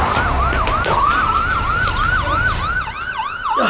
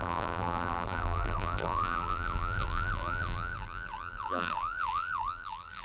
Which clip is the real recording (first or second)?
first